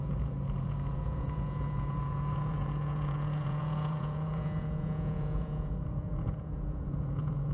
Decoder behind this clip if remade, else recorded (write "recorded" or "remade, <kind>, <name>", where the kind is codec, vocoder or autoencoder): remade, vocoder, Vocos